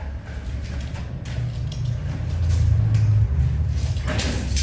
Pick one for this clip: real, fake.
real